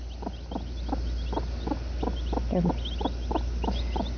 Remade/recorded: recorded